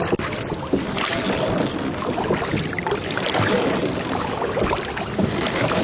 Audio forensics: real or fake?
real